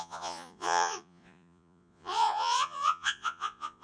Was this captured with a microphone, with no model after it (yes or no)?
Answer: no